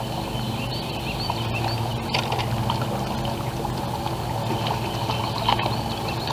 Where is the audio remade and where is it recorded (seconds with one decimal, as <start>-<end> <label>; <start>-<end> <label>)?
0.0-6.3 recorded